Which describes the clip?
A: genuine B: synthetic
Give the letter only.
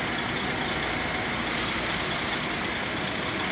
A